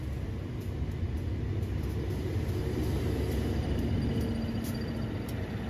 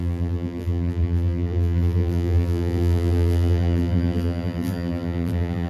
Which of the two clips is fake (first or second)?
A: second